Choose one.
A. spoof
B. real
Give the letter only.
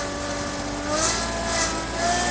B